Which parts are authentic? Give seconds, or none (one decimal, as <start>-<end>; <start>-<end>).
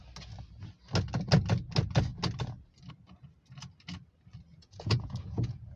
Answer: 0.0-4.5